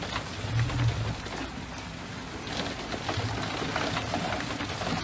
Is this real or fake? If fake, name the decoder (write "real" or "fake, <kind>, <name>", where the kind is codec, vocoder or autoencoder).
real